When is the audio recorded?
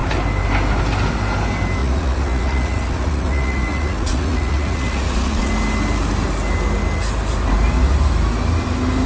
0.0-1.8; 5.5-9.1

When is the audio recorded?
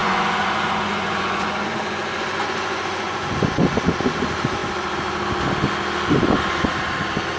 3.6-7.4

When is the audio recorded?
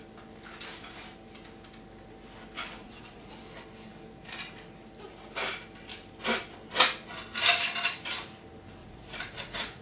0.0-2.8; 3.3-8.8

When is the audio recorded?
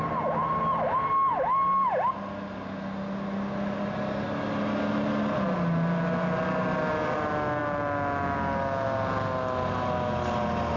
0.0-10.8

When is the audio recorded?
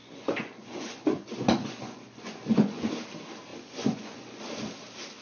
2.9-3.5; 4.4-5.2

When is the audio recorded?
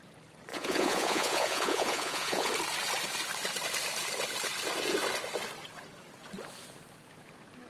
0.0-0.5; 2.5-7.7